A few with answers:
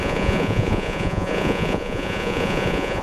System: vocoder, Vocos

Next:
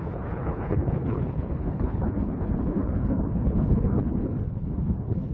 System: codec, HILCodec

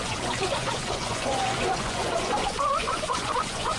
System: vocoder, Vocos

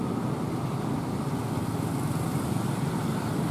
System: none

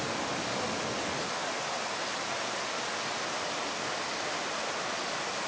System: none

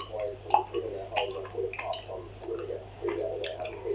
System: none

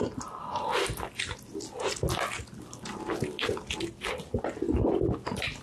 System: none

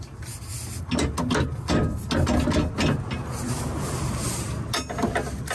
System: none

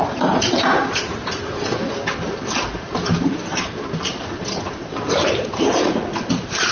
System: vocoder, BigVGAN v2